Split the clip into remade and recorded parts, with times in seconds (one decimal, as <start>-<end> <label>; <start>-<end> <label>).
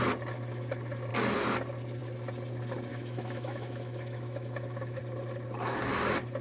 0.0-2.9 recorded; 2.9-5.0 remade; 5.0-6.4 recorded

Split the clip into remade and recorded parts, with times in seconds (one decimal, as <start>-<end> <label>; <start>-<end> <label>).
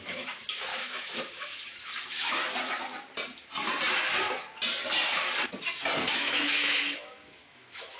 0.0-2.4 remade; 2.4-6.1 recorded; 6.1-8.0 remade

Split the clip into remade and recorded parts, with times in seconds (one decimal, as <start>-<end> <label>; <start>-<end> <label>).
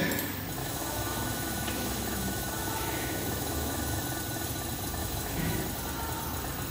0.0-0.6 recorded; 0.6-4.0 remade; 4.0-5.0 recorded; 5.0-5.6 remade; 5.6-6.7 recorded